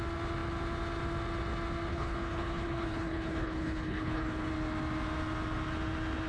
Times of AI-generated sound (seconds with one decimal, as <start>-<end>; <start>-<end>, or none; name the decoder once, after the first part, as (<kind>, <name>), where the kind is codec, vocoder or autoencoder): 1.9-4.5 (codec, HILCodec)